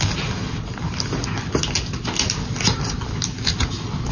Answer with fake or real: real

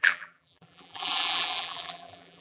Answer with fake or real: fake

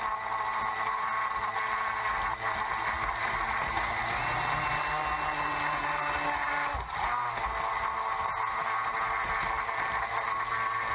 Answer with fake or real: real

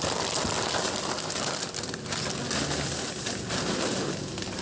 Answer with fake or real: real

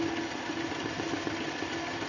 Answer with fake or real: real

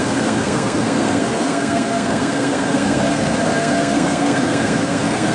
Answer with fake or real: fake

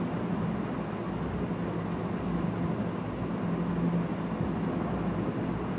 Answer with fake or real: real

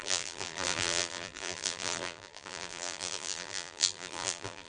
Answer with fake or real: fake